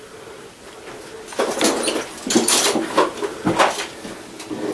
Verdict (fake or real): real